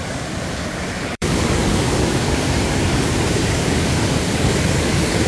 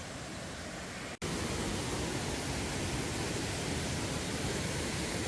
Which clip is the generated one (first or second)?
first